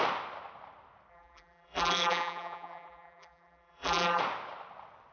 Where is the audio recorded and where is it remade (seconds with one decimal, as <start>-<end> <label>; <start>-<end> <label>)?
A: 0.0-1.1 recorded; 1.1-4.2 remade; 4.2-5.1 recorded